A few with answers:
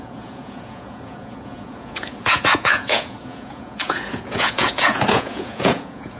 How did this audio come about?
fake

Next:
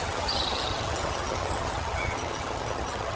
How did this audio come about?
fake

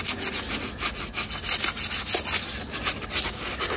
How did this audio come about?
real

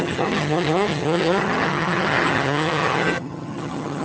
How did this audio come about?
fake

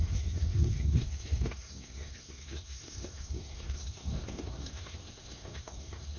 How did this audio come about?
fake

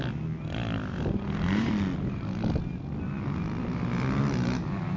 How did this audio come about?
real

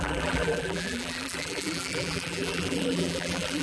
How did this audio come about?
fake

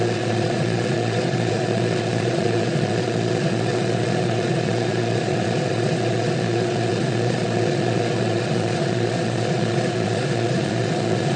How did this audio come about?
fake